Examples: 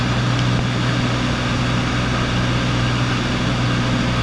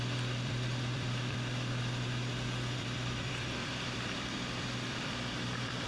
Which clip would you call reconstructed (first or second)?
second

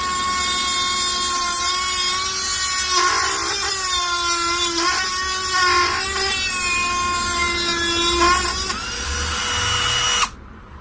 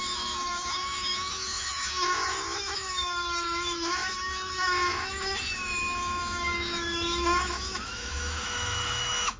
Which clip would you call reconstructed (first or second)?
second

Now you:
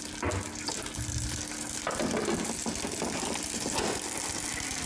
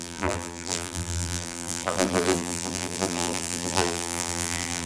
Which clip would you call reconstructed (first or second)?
second